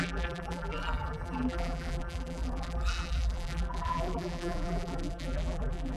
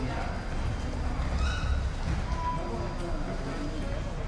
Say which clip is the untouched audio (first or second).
second